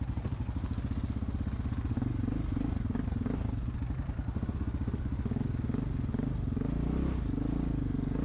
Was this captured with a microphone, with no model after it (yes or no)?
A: yes